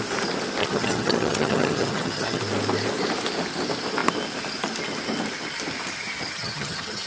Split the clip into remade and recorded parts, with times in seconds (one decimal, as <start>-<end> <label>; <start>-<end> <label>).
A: 0.0-0.6 recorded; 0.6-2.4 remade; 2.4-6.0 recorded; 6.0-7.1 remade